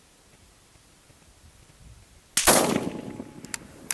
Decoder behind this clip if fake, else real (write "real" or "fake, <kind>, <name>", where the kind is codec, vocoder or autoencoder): real